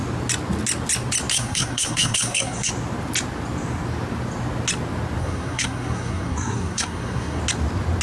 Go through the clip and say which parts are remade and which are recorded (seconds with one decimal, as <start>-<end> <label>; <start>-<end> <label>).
0.0-1.3 recorded; 1.3-2.7 remade; 2.7-5.2 recorded; 5.2-7.4 remade; 7.4-8.0 recorded